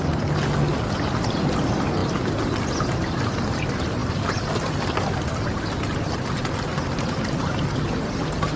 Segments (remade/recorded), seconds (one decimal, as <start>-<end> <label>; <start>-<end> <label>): 0.0-8.6 recorded